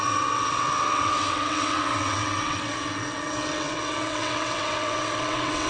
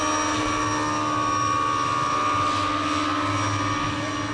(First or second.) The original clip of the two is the second